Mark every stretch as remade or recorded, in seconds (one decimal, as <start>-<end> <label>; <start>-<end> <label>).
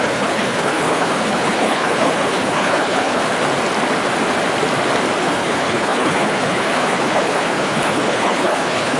0.0-3.2 remade; 3.2-5.2 recorded; 5.2-9.0 remade